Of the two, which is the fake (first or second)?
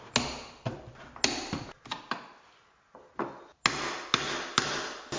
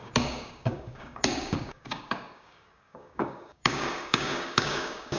second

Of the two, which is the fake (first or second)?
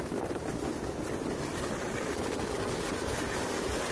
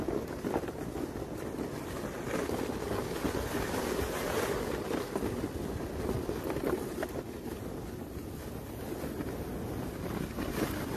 first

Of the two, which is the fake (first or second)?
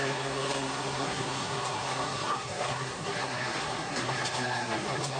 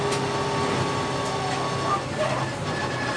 first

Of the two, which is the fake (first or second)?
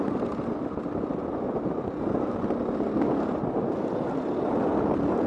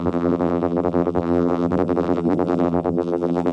second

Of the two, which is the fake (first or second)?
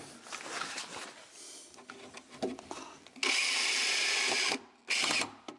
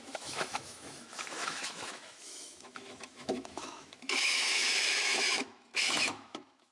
second